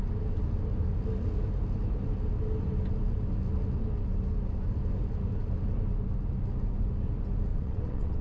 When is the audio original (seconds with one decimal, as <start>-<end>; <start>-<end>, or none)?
0.0-7.5